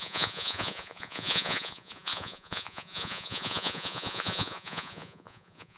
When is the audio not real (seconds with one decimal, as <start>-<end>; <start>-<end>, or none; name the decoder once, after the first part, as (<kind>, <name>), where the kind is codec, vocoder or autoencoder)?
0.0-5.8 (vocoder, Vocos)